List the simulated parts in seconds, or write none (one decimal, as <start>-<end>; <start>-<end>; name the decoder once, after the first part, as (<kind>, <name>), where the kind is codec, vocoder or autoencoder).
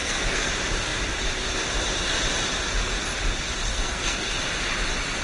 0.0-0.5 (codec, SNAC); 3.7-4.3